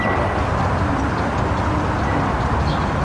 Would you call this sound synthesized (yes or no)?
no